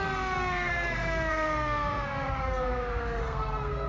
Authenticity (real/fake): fake